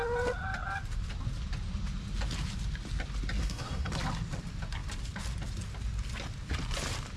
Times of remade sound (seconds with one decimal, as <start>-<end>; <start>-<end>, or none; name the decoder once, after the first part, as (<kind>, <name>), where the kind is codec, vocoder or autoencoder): 3.4-3.9 (codec, SNAC)